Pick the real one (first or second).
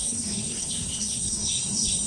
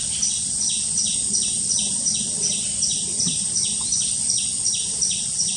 second